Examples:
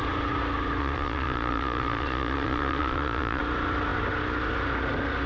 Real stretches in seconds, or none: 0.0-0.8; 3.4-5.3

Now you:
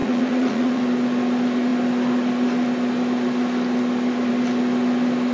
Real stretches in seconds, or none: 0.8-5.3

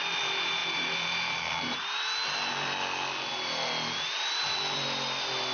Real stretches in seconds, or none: 0.0-5.5

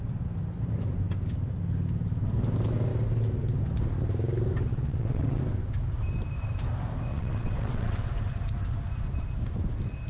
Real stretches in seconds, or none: 0.0-4.7; 5.4-7.1; 8.1-10.1

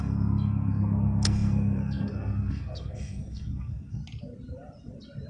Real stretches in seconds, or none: 4.0-5.3

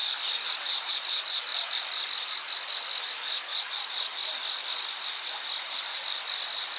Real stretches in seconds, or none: 0.9-1.5; 2.1-3.5; 4.9-6.8

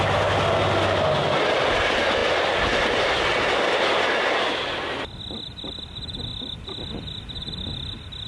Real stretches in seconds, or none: 0.0-8.3

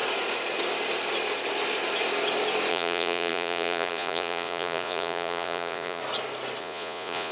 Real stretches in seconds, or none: 0.0-2.7; 6.0-6.6